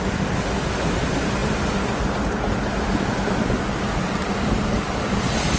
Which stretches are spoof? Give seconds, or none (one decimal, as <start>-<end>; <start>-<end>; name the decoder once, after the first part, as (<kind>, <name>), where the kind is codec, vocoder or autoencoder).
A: none